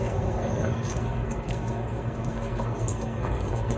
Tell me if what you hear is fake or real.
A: fake